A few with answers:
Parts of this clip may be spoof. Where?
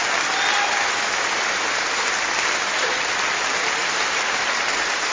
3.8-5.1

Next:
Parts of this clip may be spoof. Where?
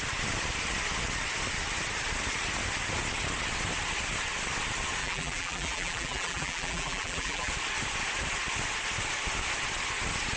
5.0-7.5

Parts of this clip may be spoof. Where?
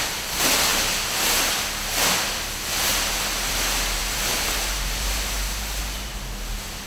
4.0-5.8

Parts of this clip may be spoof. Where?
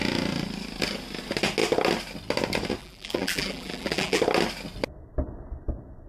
2.8-4.2